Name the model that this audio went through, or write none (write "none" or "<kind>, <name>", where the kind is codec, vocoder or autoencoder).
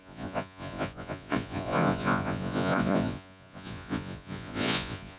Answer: vocoder, Vocos